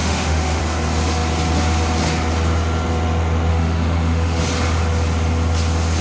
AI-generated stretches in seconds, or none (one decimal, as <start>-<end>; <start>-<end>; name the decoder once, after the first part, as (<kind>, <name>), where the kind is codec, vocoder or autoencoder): 0.0-0.6 (autoencoder, DAC-VAE); 3.5-4.4